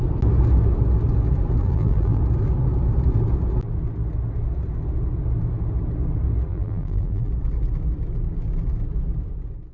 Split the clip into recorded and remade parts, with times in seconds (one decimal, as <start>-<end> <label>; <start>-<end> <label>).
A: 0.0-1.6 recorded; 1.6-2.2 remade; 2.2-6.5 recorded; 6.5-7.3 remade; 7.3-9.7 recorded